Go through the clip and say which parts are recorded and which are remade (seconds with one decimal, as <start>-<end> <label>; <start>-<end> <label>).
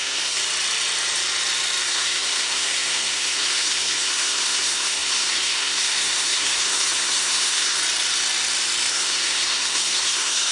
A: 0.0-0.4 remade; 0.4-1.8 recorded; 1.8-7.8 remade; 7.8-8.9 recorded; 8.9-10.5 remade